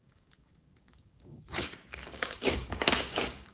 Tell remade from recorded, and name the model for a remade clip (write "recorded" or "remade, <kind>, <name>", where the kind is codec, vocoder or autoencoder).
remade, codec, DAC